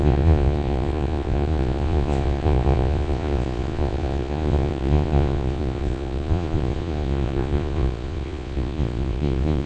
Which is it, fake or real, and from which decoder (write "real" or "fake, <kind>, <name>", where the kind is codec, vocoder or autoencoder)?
fake, vocoder, Vocos